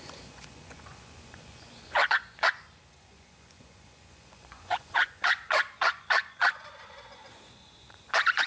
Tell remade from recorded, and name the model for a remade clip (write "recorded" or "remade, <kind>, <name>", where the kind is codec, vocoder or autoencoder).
remade, vocoder, Vocos